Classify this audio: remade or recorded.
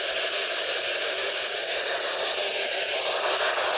recorded